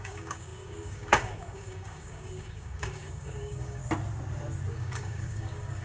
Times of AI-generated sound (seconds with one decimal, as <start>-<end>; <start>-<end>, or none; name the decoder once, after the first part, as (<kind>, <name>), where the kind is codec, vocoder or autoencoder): 0.0-3.8 (codec, DAC); 4.7-5.8